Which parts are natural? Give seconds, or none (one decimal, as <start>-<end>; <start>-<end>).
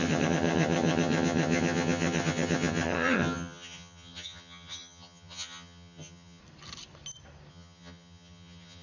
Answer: 6.4-7.5